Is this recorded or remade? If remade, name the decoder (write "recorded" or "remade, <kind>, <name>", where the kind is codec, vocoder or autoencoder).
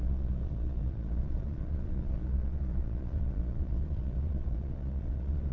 remade, vocoder, Vocos